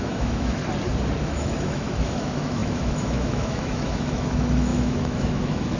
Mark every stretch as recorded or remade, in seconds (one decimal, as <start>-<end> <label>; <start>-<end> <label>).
0.0-0.6 remade; 0.6-1.2 recorded; 1.2-5.8 remade

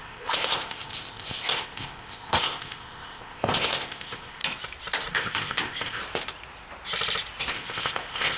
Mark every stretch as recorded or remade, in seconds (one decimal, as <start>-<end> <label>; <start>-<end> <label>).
0.0-4.4 remade; 4.4-5.1 recorded; 5.1-6.0 remade; 6.0-7.5 recorded; 7.5-8.4 remade

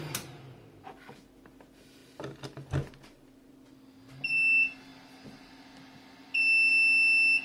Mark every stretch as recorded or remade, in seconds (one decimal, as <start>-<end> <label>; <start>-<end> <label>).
0.0-7.4 recorded

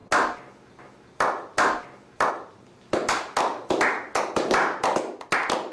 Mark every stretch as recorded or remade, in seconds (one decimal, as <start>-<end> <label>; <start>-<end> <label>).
0.0-5.7 recorded

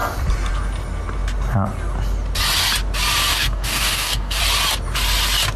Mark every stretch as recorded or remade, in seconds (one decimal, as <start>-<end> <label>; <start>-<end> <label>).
0.0-3.3 recorded; 3.3-4.4 remade; 4.4-5.6 recorded